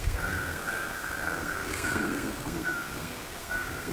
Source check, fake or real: fake